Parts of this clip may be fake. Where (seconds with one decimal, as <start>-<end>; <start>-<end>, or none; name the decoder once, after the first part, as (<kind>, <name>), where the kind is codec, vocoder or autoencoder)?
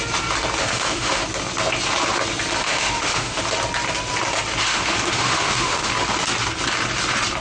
0.6-1.2 (autoencoder, DAC-VAE); 2.6-3.4; 4.7-5.9